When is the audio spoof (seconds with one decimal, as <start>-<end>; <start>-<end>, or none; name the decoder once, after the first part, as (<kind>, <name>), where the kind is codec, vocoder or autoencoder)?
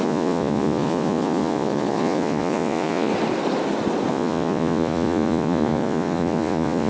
0.0-3.1 (vocoder, Vocos); 4.1-6.9